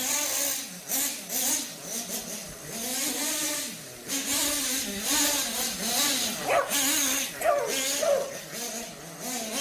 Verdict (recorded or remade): recorded